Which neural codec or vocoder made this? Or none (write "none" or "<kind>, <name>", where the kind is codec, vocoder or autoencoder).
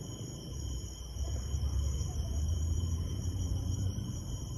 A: vocoder, BigVGAN v2